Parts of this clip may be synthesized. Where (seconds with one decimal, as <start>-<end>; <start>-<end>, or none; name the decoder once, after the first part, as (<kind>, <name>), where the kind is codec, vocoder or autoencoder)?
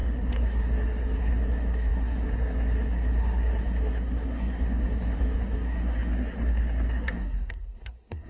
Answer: 0.0-8.3 (codec, SNAC)